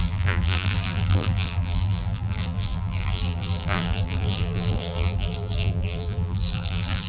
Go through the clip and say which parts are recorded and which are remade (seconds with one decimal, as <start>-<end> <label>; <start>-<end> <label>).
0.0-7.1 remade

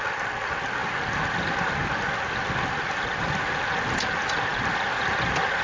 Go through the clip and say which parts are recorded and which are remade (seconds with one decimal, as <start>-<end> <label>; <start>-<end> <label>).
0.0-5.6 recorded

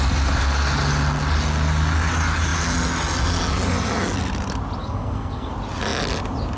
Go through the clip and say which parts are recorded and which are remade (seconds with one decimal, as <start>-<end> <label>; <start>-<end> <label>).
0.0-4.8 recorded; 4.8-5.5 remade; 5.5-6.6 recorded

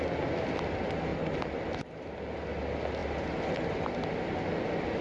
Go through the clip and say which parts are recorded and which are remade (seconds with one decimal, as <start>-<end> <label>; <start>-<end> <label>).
0.0-5.0 recorded